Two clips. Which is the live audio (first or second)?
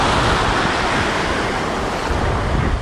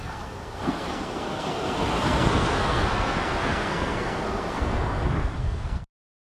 first